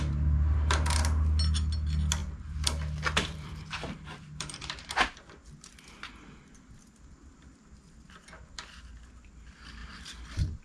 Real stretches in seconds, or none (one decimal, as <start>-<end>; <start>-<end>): 0.0-2.2; 4.6-9.8